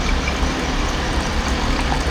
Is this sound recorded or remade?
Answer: remade